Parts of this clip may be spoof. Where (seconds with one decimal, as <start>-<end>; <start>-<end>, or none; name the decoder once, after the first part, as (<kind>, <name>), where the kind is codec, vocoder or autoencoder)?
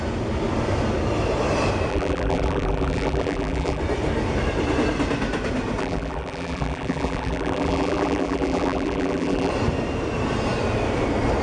1.9-3.8 (vocoder, BigVGAN v2); 5.8-9.5